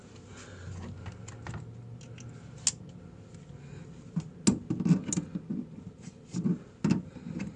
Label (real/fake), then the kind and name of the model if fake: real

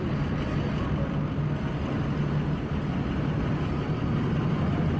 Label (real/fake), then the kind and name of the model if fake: real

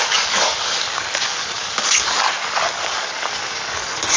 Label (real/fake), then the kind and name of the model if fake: fake, codec, DAC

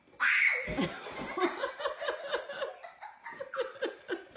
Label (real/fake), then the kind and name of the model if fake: real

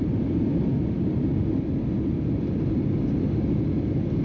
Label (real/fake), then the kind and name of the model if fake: real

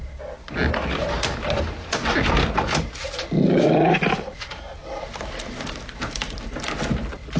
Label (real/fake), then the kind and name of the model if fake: real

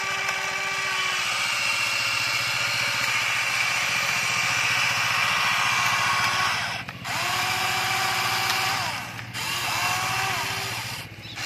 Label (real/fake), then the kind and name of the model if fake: real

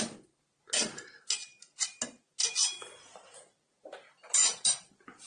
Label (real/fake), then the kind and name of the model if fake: real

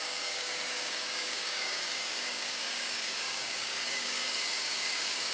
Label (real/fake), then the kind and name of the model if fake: fake, codec, DAC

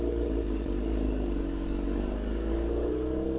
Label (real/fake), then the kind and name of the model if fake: fake, codec, DAC